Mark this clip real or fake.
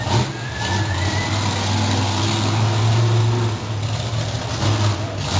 real